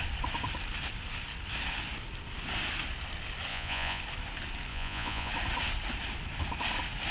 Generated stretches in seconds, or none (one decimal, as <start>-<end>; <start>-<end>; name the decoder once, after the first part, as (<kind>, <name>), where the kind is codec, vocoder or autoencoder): 3.5-4.0 (vocoder, Vocos); 4.7-5.3